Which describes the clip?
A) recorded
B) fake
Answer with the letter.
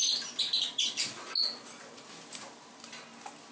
A